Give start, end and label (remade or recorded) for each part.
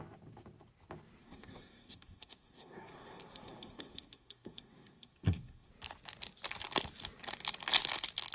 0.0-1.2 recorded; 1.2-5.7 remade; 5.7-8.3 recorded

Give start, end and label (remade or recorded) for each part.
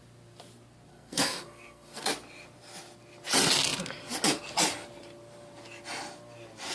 0.0-0.9 recorded; 0.9-2.1 remade; 2.1-6.7 recorded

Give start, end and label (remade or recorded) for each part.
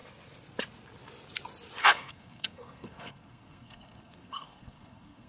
0.0-1.8 recorded; 1.8-5.3 remade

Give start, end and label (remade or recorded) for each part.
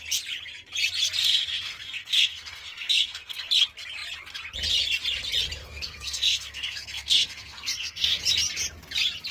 0.0-1.2 recorded; 1.2-3.5 remade; 3.5-5.6 recorded; 5.6-8.2 remade; 8.2-9.3 recorded